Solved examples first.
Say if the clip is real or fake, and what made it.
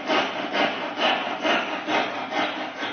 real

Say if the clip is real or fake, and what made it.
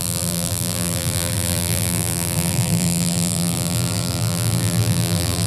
fake, vocoder, BigVGAN v2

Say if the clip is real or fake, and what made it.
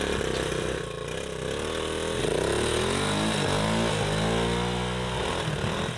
real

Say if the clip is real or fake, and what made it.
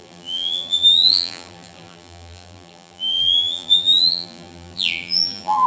fake, vocoder, BigVGAN v2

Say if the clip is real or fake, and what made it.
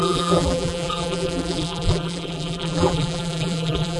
fake, vocoder, BigVGAN v2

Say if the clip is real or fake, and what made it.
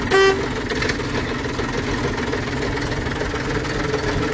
real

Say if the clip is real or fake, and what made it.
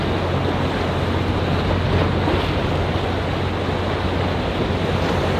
real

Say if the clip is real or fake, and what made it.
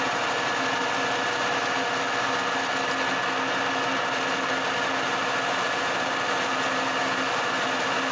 real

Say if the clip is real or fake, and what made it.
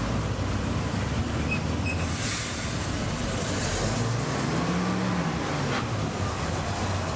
real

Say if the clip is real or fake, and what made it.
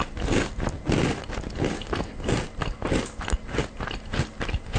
real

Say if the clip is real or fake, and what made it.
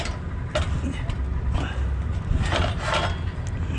real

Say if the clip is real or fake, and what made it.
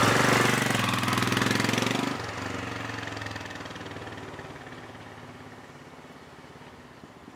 real